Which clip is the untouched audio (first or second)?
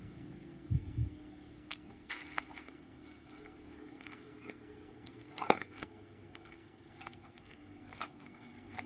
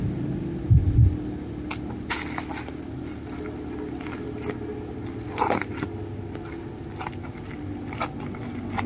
second